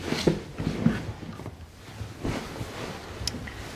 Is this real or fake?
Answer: real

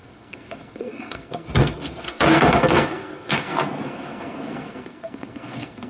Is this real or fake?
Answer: fake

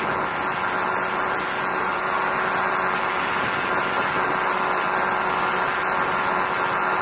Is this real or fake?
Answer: real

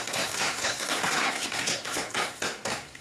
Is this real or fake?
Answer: fake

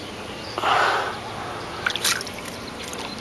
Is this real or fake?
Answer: real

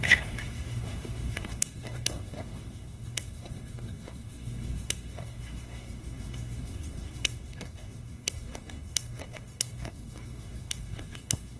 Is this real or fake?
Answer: fake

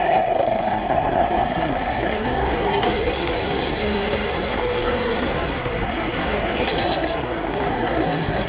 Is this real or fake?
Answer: fake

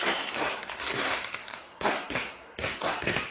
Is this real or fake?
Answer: fake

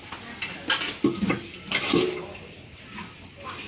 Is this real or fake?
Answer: real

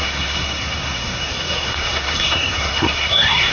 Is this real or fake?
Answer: fake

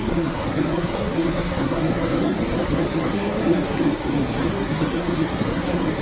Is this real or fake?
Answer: fake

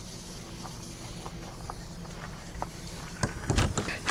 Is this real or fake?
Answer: real